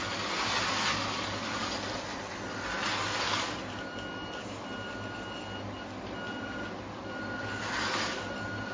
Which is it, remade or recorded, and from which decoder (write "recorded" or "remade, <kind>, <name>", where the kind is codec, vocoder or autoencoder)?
recorded